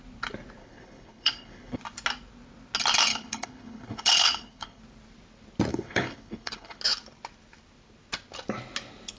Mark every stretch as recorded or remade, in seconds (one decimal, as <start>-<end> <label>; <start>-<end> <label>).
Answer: 0.0-0.6 recorded; 0.6-1.8 remade; 1.8-3.1 recorded; 3.1-4.8 remade; 4.8-5.7 recorded; 5.7-6.8 remade; 6.8-9.2 recorded